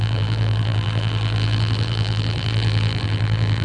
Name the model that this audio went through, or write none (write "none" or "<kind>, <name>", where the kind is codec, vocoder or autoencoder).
vocoder, BigVGAN v2